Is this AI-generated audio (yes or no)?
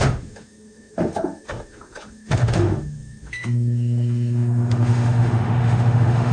yes